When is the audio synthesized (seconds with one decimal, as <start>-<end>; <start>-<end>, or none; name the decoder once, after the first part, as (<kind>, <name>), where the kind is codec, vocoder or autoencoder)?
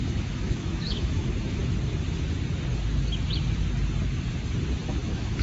0.0-1.6 (autoencoder, DAC-VAE); 4.8-5.4